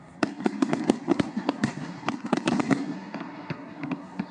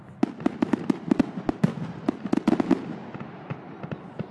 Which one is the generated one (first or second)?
first